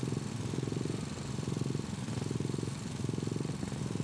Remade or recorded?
recorded